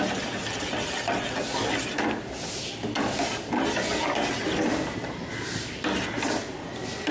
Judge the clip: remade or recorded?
recorded